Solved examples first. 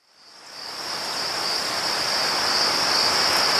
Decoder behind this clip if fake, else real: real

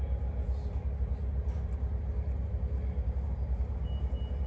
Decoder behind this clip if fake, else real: real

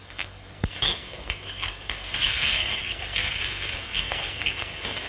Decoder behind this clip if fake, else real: fake, codec, SNAC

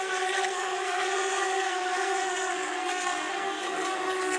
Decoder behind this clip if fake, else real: fake, codec, SNAC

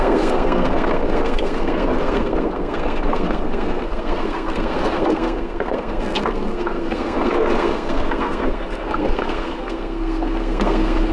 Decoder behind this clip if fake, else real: fake, codec, SNAC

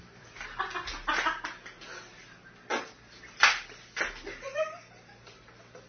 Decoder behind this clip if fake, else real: real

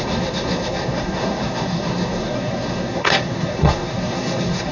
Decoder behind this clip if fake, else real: fake, codec, SNAC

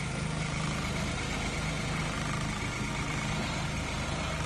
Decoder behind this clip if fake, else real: real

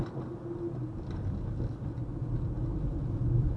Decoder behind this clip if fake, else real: real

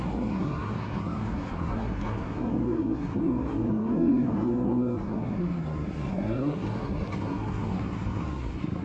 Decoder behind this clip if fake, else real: fake, codec, SNAC